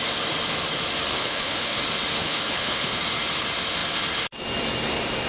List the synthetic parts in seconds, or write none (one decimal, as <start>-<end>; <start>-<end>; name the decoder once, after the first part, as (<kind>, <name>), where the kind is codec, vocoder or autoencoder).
1.1-1.8 (codec, HILCodec); 2.2-3.0